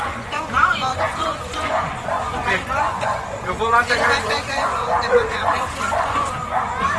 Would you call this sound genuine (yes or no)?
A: no